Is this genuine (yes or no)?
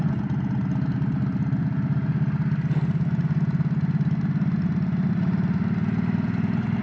yes